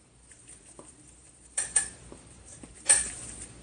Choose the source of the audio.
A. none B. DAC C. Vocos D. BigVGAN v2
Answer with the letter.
D